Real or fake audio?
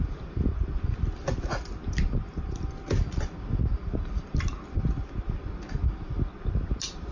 real